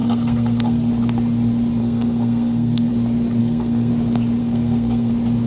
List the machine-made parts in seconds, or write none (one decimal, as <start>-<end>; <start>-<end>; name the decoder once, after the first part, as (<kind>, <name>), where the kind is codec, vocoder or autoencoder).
0.0-0.9 (codec, SNAC); 1.8-2.9; 3.4-3.9; 4.4-5.1